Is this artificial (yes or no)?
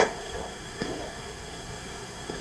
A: yes